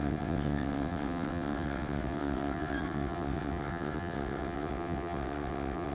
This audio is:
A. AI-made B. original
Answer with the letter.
A